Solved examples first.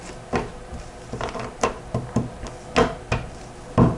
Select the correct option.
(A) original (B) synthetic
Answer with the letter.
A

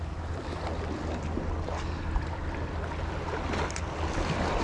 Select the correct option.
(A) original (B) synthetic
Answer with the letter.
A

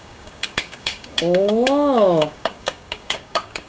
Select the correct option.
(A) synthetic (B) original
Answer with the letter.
A